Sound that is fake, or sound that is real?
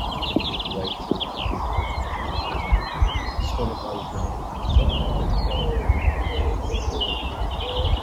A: real